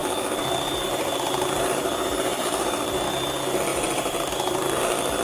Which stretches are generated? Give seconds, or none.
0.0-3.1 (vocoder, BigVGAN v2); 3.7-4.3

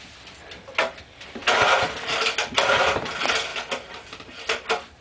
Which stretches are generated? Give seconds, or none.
none

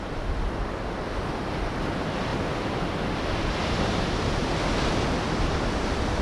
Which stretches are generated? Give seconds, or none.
0.0-2.3 (vocoder, BigVGAN v2); 3.6-4.4; 5.0-6.2

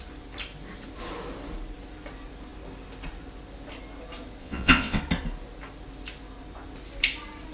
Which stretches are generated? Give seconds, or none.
4.4-5.0 (vocoder, WaveNeXt)

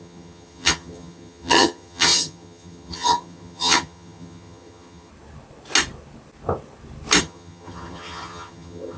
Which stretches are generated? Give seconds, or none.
0.0-5.1 (vocoder, HiFi-GAN); 7.2-9.0

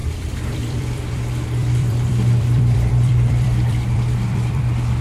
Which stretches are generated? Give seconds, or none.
0.0-1.2 (vocoder, BigVGAN v2); 1.6-4.6